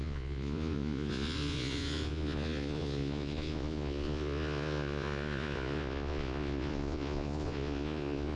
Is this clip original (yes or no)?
no